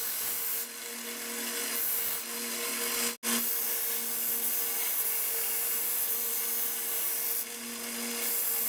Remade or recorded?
recorded